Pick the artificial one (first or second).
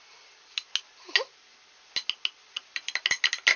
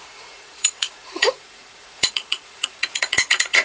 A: second